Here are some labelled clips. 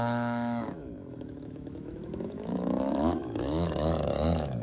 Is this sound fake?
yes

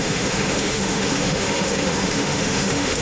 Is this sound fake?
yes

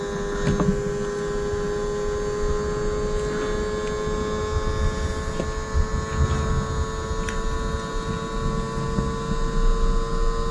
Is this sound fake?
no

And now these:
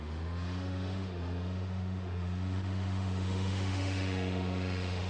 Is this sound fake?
yes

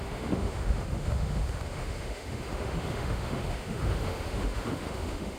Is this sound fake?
yes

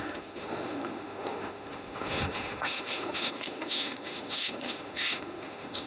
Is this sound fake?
yes